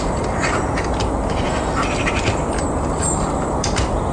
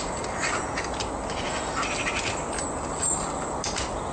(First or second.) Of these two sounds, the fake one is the first